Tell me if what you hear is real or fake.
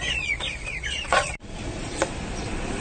fake